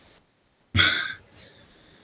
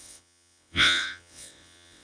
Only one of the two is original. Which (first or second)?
first